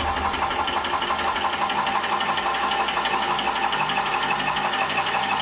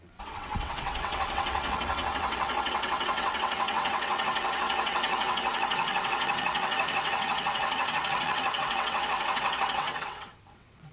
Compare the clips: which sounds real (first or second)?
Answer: first